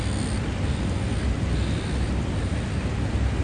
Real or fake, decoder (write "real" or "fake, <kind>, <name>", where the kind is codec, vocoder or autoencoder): real